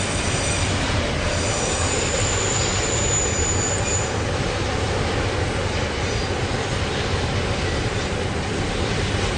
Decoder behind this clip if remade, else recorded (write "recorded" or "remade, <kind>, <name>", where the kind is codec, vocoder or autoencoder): recorded